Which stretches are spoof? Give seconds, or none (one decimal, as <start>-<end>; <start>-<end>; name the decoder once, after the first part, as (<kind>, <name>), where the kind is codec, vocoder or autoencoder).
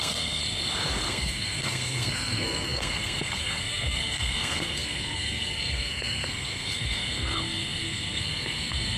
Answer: 0.0-0.4 (codec, SNAC); 1.1-9.0